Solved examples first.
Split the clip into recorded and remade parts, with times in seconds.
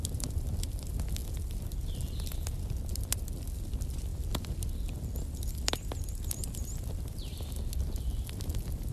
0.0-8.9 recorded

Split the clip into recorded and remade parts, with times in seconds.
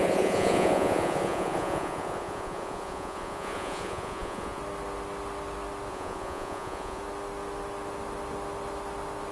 0.0-4.6 remade; 4.6-5.9 recorded; 5.9-7.0 remade; 7.0-9.3 recorded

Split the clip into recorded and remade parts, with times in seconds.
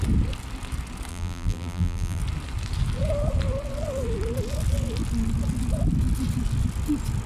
0.0-1.1 recorded; 1.1-2.2 remade; 2.2-7.3 recorded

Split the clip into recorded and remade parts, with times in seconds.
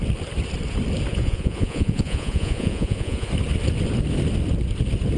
0.0-1.1 recorded; 1.1-3.3 remade; 3.3-5.2 recorded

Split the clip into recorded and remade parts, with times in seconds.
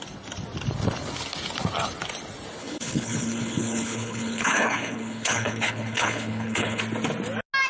0.0-2.6 recorded; 2.6-6.8 remade; 6.8-7.7 recorded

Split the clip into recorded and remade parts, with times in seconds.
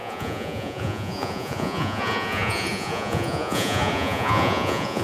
0.0-5.0 remade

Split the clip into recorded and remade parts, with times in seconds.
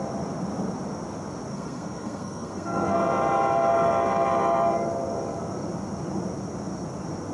0.0-1.5 recorded; 1.5-3.0 remade; 3.0-7.3 recorded